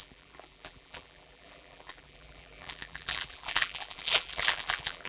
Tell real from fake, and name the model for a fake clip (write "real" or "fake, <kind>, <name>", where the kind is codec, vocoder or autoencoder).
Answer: fake, vocoder, BigVGAN v2